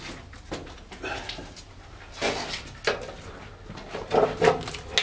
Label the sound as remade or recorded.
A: recorded